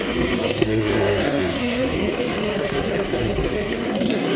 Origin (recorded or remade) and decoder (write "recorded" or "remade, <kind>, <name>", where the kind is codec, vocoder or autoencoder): remade, codec, SNAC